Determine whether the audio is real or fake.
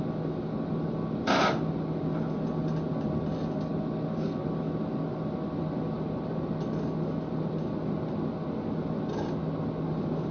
real